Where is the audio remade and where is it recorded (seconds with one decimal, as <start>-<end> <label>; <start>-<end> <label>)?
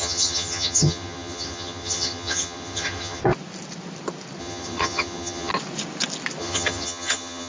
0.0-3.2 remade; 3.2-4.4 recorded; 4.4-5.5 remade; 5.5-6.4 recorded; 6.4-7.5 remade